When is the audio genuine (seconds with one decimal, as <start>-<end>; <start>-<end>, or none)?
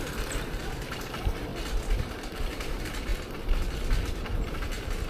1.5-2.4; 3.1-4.0